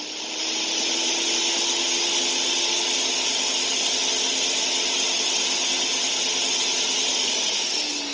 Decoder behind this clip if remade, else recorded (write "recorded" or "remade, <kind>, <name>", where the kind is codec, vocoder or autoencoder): recorded